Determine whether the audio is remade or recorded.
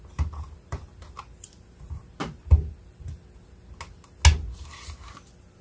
recorded